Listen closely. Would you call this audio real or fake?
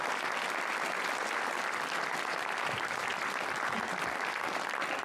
real